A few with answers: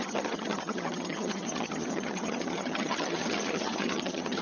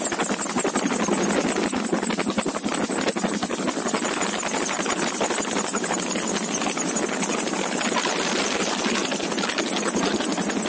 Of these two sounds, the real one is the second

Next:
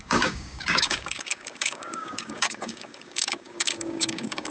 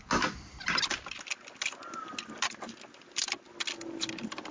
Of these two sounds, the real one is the second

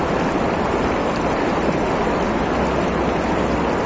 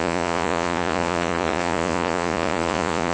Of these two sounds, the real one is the first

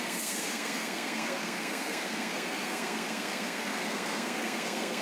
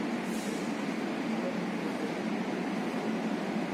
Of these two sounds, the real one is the second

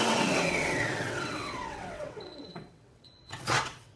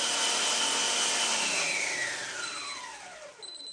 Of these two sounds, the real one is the second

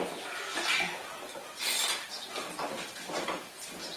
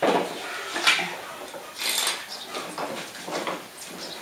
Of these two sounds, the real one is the second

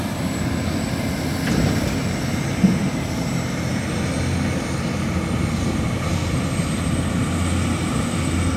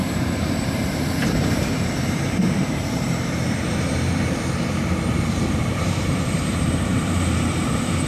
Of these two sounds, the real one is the first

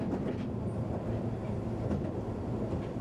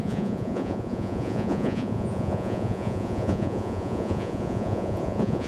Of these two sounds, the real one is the first